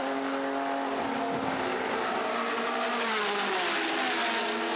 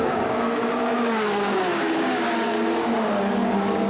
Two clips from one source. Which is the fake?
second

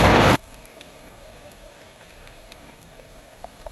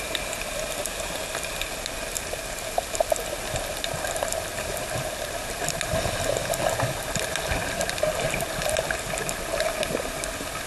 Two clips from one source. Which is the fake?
first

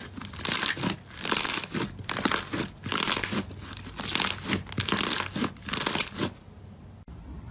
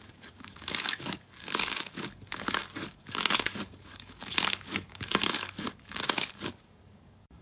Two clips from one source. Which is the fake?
second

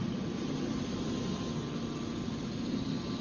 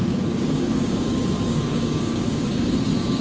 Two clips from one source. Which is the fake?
second